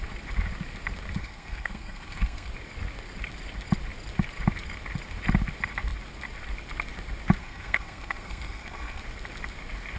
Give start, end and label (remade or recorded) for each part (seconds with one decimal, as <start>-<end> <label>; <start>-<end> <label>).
0.0-1.2 recorded; 1.2-2.5 remade; 2.5-7.4 recorded; 7.4-9.0 remade; 9.0-10.0 recorded